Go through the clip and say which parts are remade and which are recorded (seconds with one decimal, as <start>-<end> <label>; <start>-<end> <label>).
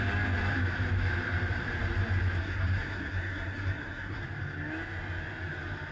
0.0-2.4 recorded; 2.4-4.2 remade; 4.2-5.9 recorded